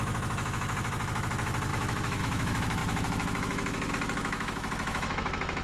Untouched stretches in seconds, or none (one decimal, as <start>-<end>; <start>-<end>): none

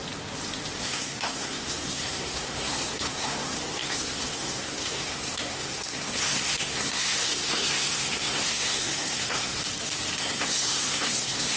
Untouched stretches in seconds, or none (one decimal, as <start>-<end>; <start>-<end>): 0.0-0.8; 9.6-10.2